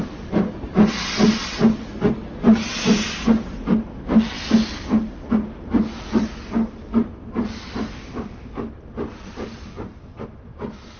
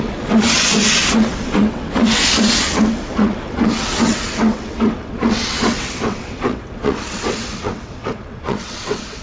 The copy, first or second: second